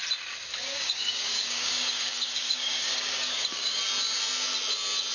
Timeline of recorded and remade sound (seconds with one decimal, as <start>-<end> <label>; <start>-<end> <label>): 0.0-0.7 recorded; 0.7-3.8 remade; 3.8-5.1 recorded